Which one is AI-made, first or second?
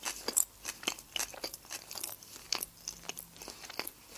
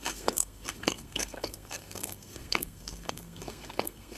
second